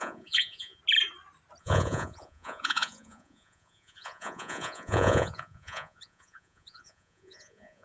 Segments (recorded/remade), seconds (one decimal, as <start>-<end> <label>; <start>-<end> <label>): 0.0-0.8 remade; 0.8-1.6 recorded; 1.6-7.8 remade